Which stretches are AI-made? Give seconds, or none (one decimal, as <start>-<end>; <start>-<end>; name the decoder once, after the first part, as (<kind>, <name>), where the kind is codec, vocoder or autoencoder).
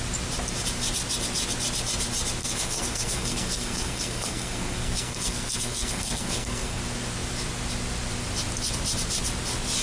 2.4-6.8 (codec, SNAC)